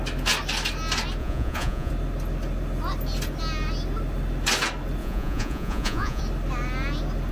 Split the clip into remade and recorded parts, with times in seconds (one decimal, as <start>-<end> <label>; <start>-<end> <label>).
0.0-1.2 recorded; 1.2-1.9 remade; 1.9-5.0 recorded; 5.0-6.2 remade; 6.2-7.3 recorded